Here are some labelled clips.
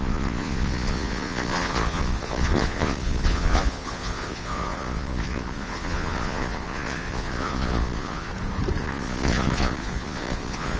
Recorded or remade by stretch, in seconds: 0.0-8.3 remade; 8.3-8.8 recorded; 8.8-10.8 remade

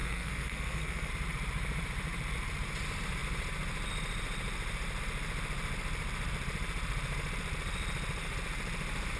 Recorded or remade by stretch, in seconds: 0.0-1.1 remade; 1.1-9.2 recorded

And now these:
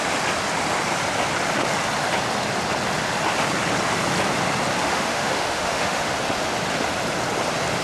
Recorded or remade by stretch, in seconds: 0.0-4.8 recorded; 4.8-6.1 remade; 6.1-7.8 recorded